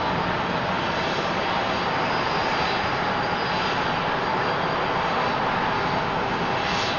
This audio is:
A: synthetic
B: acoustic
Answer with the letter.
B